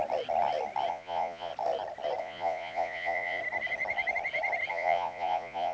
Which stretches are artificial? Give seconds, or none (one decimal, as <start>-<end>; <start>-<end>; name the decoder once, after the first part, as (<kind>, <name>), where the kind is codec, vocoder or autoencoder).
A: 0.9-1.5 (vocoder, Vocos); 2.2-3.4; 4.7-5.7